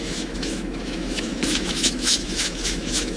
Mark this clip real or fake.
fake